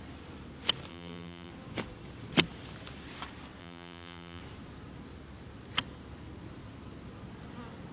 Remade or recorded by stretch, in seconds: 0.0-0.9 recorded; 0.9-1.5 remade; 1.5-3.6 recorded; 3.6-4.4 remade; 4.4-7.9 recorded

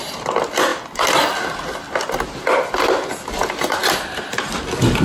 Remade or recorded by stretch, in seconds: 0.0-5.0 recorded

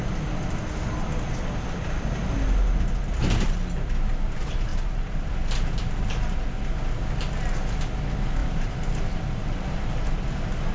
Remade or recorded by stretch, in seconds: 0.0-4.7 recorded; 4.7-5.3 remade; 5.3-8.4 recorded; 8.4-9.9 remade; 9.9-10.7 recorded

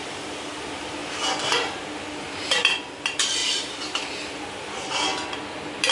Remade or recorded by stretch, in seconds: 0.0-5.1 remade; 5.1-5.9 recorded

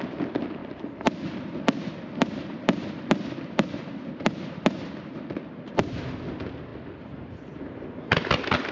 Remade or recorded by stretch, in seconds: 0.0-0.6 recorded; 0.6-5.5 remade; 5.5-6.7 recorded; 6.7-7.4 remade; 7.4-8.7 recorded

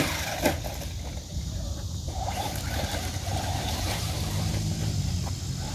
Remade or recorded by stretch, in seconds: 0.0-1.3 recorded; 1.3-4.7 remade; 4.7-5.7 recorded

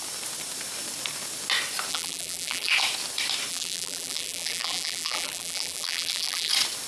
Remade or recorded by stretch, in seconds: 0.0-1.9 recorded; 1.9-2.7 remade; 2.7-3.5 recorded; 3.5-6.5 remade; 6.5-6.9 recorded

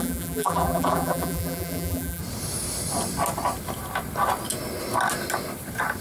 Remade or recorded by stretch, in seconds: 0.0-2.2 remade; 2.2-6.0 recorded